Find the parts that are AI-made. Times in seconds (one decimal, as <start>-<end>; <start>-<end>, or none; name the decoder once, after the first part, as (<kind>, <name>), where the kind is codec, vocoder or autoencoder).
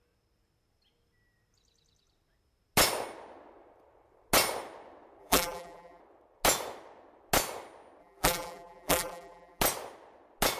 5.2-6.0 (vocoder, BigVGAN v2); 8.0-9.6